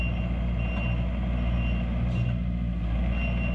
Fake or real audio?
real